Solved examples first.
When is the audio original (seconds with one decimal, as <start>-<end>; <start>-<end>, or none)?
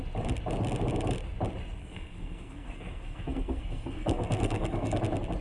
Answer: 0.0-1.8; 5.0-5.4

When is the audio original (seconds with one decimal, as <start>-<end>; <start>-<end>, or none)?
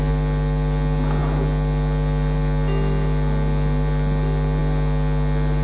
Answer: 0.0-5.6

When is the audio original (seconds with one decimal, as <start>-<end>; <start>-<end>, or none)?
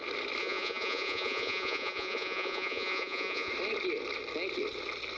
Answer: 0.0-0.4; 3.5-5.2